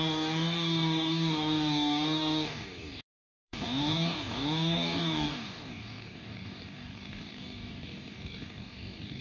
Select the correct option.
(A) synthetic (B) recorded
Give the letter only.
A